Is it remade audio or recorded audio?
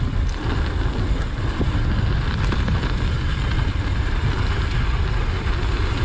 recorded